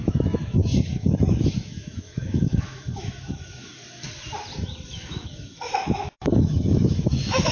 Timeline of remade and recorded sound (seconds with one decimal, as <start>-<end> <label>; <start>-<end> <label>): 0.0-3.8 remade; 3.8-4.9 recorded; 4.9-7.5 remade